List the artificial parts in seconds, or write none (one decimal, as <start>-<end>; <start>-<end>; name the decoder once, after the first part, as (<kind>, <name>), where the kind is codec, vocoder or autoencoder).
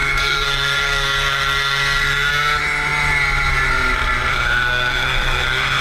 0.0-2.3 (codec, SNAC); 4.3-5.8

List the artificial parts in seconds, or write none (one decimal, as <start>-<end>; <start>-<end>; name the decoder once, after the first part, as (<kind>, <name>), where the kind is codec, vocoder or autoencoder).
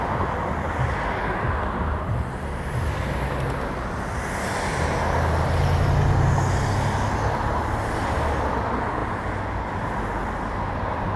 none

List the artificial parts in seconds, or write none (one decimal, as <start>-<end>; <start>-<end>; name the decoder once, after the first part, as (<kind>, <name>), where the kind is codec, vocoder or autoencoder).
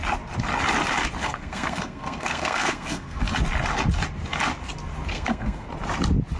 1.2-3.2 (codec, SNAC); 5.1-5.7